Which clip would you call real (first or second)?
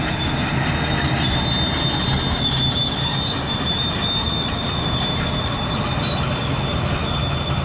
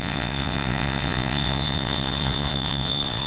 first